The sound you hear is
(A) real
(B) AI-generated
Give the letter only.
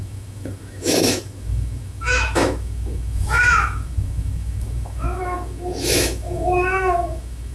B